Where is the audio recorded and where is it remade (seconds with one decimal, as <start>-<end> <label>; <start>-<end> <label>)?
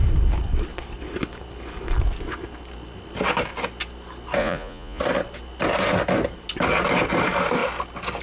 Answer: 0.0-4.4 recorded; 4.4-5.0 remade; 5.0-8.2 recorded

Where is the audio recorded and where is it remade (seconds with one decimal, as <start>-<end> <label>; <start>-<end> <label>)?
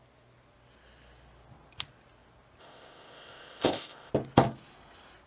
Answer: 0.0-2.6 recorded; 2.6-4.1 remade; 4.1-5.3 recorded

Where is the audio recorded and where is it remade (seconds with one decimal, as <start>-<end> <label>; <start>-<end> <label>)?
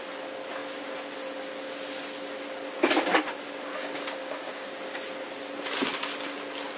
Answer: 0.0-3.7 recorded; 3.7-4.7 remade; 4.7-6.8 recorded